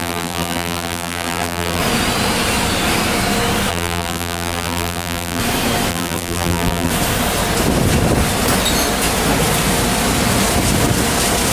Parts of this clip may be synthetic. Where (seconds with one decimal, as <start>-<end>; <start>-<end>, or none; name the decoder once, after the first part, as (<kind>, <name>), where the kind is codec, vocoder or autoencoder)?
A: 0.0-1.8 (vocoder, BigVGAN v2); 3.7-5.4; 5.9-6.9